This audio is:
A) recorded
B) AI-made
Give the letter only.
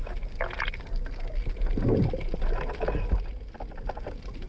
A